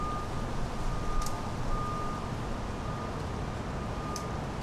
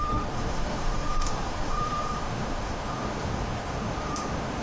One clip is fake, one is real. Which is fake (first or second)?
second